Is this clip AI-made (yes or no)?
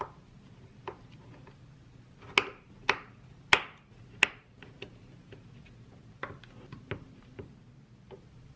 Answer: no